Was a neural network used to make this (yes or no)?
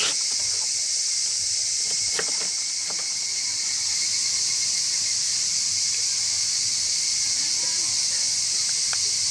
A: no